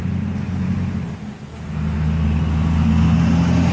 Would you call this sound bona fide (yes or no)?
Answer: yes